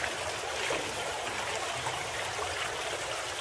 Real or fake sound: real